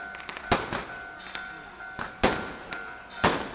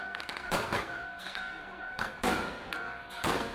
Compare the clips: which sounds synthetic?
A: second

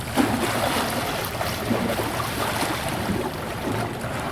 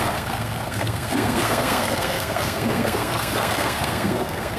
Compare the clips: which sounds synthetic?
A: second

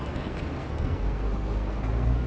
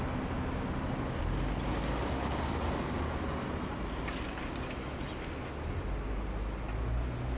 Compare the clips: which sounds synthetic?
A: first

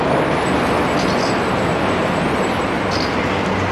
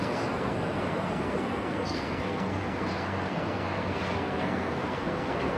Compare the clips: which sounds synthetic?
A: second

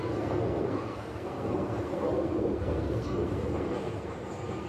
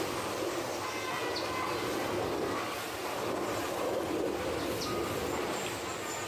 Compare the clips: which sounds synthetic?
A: first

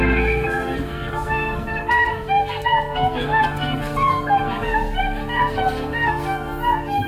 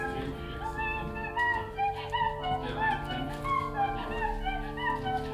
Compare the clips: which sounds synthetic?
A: first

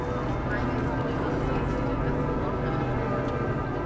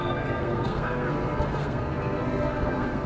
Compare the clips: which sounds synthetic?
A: second